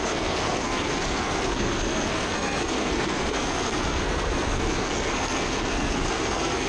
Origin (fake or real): fake